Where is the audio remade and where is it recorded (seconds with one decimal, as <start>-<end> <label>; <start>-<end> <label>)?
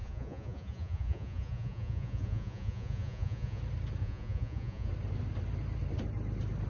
0.0-3.6 remade; 3.6-4.0 recorded; 4.0-4.9 remade; 4.9-6.7 recorded